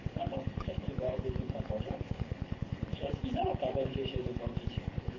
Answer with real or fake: fake